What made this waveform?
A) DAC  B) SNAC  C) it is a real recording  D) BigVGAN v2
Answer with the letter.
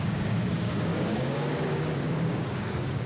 A